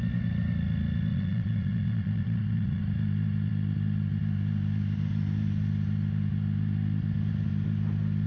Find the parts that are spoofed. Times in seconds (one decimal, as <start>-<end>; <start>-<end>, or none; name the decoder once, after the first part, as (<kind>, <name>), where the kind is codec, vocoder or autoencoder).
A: 1.1-2.8 (vocoder, Vocos)